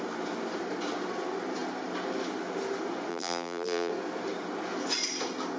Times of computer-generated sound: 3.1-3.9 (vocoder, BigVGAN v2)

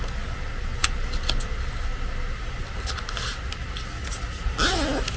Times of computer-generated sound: none

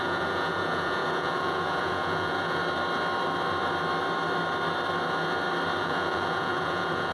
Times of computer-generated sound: 0.0-2.6 (vocoder, Vocos); 5.8-7.1

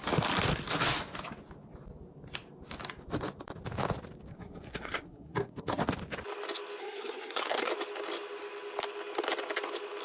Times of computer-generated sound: 4.3-5.8 (codec, SNAC); 6.8-7.7

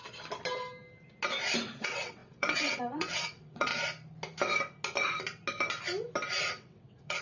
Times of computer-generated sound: 1.6-3.7 (vocoder, WaveNeXt); 6.4-7.2

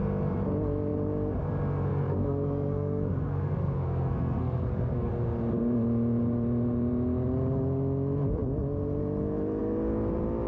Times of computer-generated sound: 1.9-5.1 (codec, SNAC)

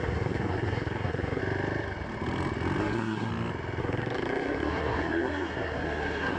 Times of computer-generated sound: 0.0-1.4 (codec, SNAC); 2.8-3.3; 3.8-6.4